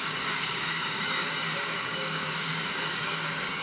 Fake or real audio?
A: fake